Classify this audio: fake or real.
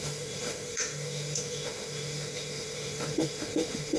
fake